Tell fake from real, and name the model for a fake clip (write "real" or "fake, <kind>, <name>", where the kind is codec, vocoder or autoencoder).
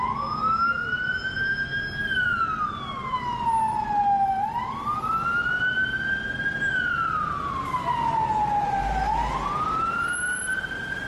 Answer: real